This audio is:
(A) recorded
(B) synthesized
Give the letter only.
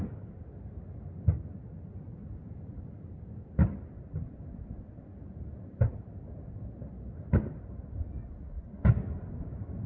A